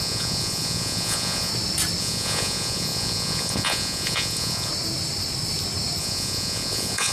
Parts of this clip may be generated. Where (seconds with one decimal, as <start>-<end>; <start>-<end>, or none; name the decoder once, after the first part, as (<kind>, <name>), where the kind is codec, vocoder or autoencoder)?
0.0-1.5 (vocoder, Vocos); 2.0-4.7; 6.0-7.1